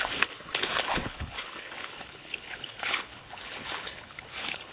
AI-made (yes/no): yes